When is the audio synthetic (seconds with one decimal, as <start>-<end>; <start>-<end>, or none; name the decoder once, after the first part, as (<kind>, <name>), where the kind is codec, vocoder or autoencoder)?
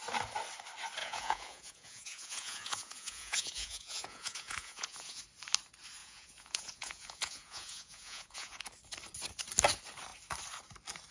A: 1.0-5.2 (vocoder, Vocos); 6.0-8.6